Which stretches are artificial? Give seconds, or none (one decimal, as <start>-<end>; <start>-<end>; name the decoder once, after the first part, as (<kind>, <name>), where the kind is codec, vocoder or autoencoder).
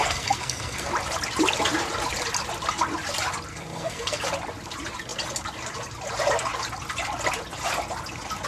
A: 0.0-0.9 (codec, SNAC); 3.5-4.2